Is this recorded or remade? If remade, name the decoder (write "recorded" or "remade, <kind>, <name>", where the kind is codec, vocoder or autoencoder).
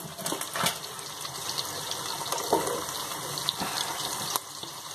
recorded